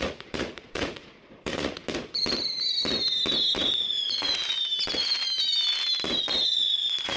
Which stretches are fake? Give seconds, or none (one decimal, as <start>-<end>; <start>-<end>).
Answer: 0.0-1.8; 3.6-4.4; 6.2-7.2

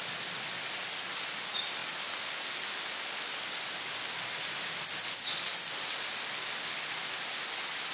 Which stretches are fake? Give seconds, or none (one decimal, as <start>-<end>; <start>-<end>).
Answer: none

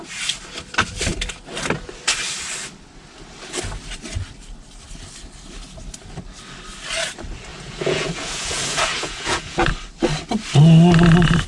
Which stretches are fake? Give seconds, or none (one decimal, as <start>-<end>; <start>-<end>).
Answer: 7.5-9.7

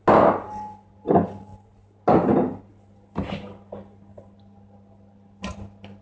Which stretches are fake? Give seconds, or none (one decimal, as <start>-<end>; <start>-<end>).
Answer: none

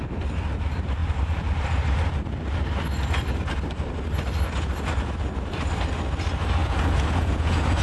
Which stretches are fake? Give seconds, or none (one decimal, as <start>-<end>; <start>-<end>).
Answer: 6.6-7.8

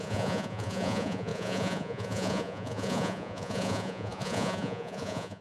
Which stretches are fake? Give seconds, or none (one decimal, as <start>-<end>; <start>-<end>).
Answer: 0.0-5.4

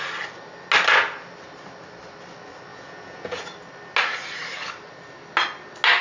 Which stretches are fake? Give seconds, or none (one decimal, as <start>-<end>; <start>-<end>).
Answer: 2.7-3.4